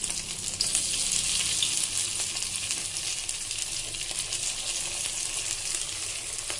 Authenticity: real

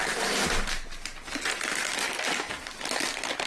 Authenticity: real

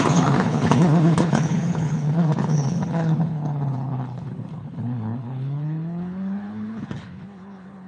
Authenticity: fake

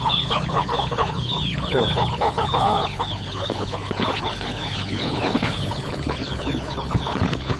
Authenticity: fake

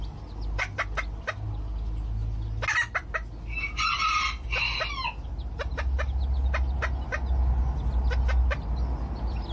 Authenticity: real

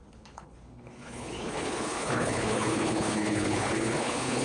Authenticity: fake